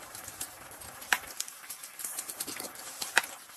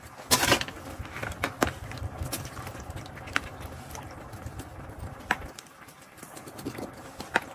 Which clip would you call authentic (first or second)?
second